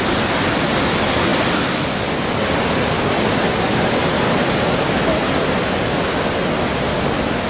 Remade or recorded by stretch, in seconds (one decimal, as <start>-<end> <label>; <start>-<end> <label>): 0.0-7.5 recorded